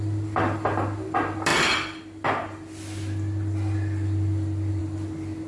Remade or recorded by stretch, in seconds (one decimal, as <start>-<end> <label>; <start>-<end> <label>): 0.0-5.5 recorded